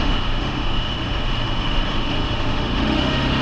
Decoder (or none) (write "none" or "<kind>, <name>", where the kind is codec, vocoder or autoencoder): autoencoder, DAC-VAE